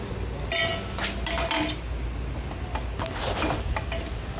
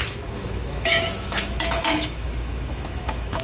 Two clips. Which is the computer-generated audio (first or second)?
second